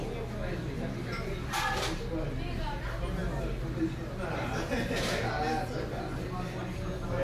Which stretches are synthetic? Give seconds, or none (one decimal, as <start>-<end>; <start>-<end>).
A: none